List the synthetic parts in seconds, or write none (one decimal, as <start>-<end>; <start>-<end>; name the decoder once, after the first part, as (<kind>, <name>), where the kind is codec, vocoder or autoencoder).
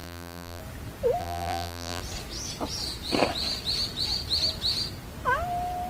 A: 0.0-0.6 (vocoder, BigVGAN v2); 1.2-2.0